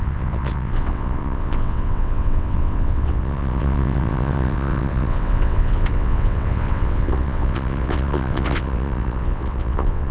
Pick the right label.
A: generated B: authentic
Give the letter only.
A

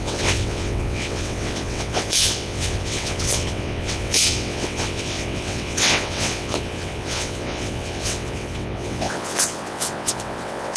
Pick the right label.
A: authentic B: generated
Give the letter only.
B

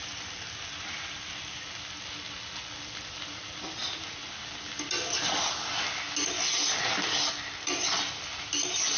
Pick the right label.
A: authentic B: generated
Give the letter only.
A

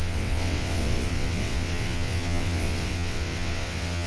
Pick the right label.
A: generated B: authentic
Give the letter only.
A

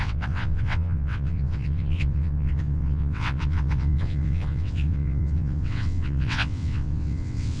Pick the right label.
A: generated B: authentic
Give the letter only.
A